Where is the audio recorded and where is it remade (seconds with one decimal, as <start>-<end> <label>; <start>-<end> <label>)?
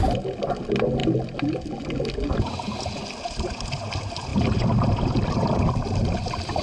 0.0-6.6 recorded